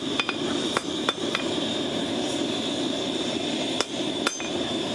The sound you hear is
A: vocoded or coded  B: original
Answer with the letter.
A